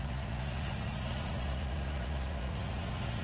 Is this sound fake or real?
fake